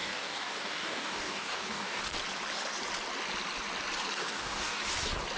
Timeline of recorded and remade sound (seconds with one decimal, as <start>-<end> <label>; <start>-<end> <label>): 0.0-2.0 remade; 2.0-4.2 recorded; 4.2-4.8 remade; 4.8-5.4 recorded